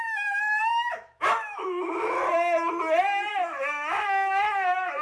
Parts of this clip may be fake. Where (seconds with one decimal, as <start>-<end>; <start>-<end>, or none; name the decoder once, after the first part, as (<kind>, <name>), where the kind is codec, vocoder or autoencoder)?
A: 0.0-2.2 (autoencoder, DAC-VAE); 3.3-5.0